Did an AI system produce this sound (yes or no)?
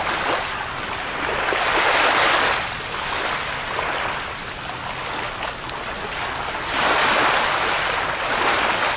no